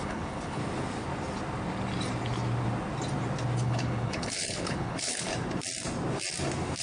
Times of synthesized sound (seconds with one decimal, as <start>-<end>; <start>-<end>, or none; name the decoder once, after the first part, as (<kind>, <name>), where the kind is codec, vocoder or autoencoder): 0.0-0.6 (codec, HILCodec); 3.6-5.3